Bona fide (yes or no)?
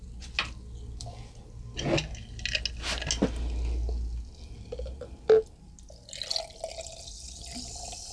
yes